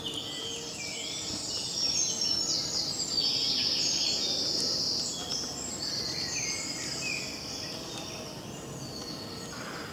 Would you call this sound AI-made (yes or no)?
no